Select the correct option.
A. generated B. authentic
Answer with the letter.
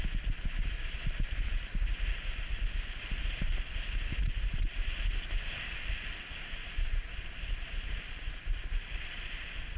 B